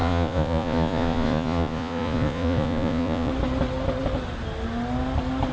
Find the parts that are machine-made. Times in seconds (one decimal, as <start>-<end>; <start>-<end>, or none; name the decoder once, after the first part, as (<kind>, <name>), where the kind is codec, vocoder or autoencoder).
0.0-3.3 (vocoder, Vocos)